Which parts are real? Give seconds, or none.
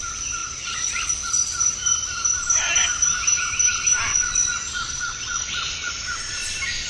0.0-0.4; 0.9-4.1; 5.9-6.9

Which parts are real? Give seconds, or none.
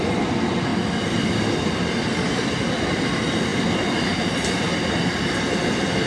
0.0-6.1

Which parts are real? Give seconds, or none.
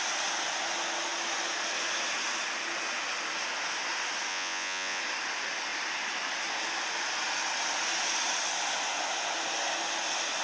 0.0-4.3; 5.0-10.4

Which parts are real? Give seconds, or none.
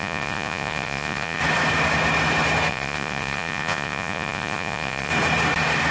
1.4-2.7; 5.1-5.9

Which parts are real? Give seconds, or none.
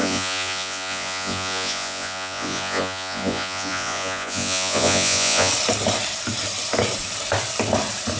5.5-8.2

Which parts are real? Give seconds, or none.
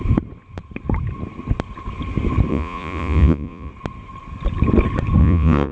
0.0-2.5; 3.7-5.2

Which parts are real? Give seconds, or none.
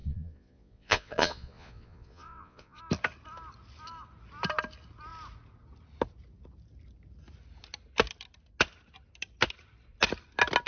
2.8-10.7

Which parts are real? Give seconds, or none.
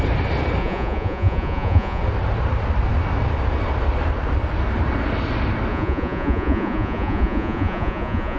0.0-0.6; 2.0-5.7